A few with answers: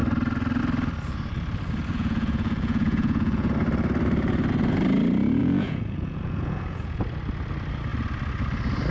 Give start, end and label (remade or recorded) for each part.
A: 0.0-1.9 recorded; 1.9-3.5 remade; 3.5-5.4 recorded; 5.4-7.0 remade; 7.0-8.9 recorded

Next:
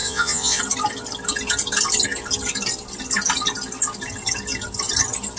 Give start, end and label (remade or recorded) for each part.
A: 0.0-0.6 remade; 0.6-5.4 recorded

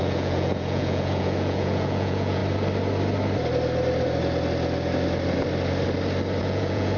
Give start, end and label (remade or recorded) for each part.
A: 0.0-2.4 remade; 2.4-6.4 recorded; 6.4-7.0 remade

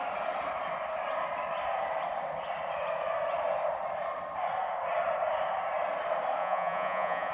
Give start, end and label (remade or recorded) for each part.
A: 0.0-6.4 recorded; 6.4-7.3 remade

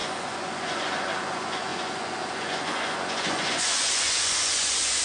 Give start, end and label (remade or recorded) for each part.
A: 0.0-5.0 remade

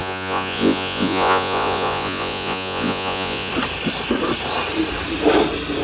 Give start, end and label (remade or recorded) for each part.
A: 0.0-3.5 remade; 3.5-5.8 recorded

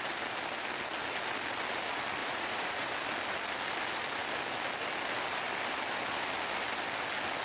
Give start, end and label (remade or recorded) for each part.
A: 0.0-2.2 recorded; 2.2-2.9 remade; 2.9-7.4 recorded

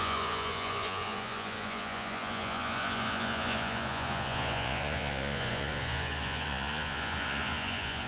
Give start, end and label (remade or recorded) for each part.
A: 0.0-8.1 remade